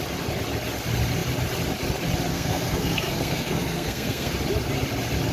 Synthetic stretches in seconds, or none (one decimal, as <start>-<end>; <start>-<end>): 2.3-4.3